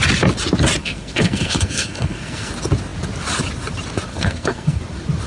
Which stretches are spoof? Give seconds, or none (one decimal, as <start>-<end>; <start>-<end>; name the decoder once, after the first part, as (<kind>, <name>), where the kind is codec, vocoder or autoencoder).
0.8-2.5 (codec, SNAC); 4.1-4.8